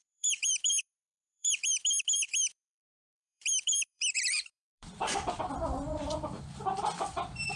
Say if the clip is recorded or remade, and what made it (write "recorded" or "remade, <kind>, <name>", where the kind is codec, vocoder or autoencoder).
remade, vocoder, BigVGAN v2